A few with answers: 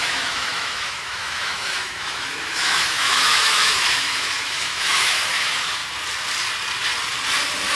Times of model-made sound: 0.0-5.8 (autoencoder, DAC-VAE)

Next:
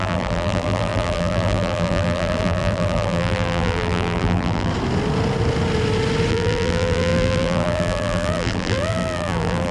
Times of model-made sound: 0.0-4.7 (vocoder, BigVGAN v2); 6.3-9.7

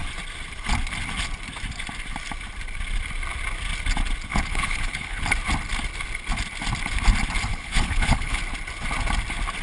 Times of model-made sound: 4.3-5.2 (codec, HILCodec); 7.5-8.4

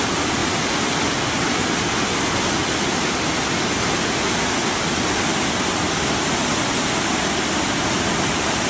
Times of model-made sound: none

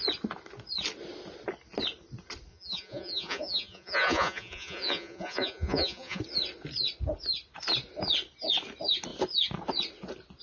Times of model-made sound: 2.5-6.2 (vocoder, Vocos)

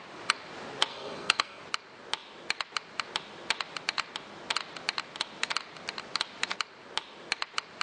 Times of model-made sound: 0.9-1.6 (codec, SNAC)

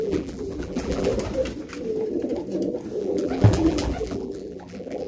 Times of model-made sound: 0.0-1.1 (vocoder, BigVGAN v2); 3.0-5.1

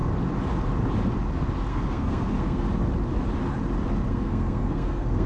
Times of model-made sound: 1.7-2.6 (codec, SNAC); 4.1-5.3